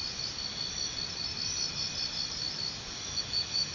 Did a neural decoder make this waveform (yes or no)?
no